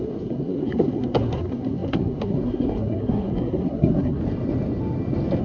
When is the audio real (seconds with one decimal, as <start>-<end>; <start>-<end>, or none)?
4.2-5.4